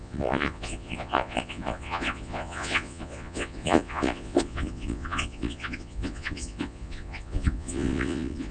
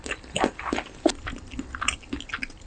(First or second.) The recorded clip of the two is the second